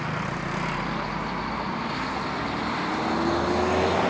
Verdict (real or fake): real